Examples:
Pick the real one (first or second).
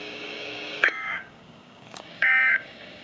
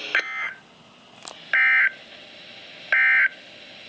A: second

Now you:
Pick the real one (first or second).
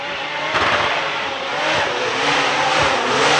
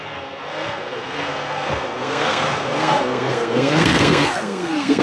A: first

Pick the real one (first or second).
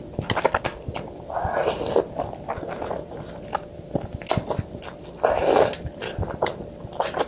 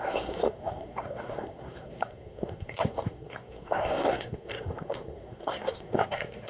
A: first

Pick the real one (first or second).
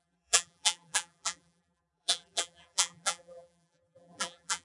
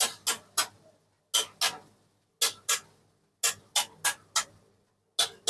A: second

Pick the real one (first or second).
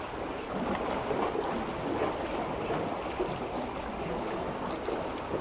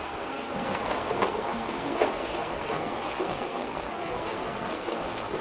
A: first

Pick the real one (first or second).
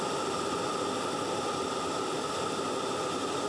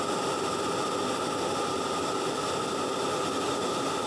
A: second